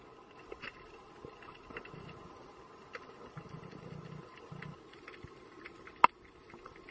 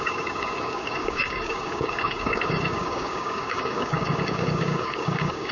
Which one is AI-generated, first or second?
second